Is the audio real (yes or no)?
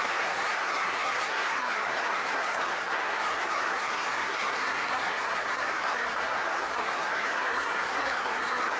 no